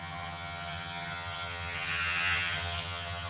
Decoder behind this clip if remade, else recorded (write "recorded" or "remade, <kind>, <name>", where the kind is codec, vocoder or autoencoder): remade, vocoder, HiFi-GAN